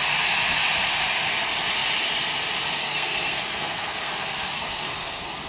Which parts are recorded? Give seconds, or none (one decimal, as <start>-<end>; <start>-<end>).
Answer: 0.0-2.8